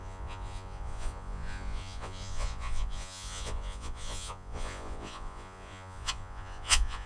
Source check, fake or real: fake